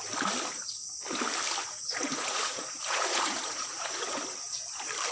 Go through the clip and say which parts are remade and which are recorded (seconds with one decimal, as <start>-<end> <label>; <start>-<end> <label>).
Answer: 0.0-1.6 recorded; 1.6-4.0 remade; 4.0-5.1 recorded